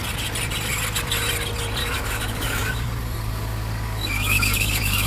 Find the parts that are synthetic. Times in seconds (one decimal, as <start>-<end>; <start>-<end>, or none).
1.8-5.1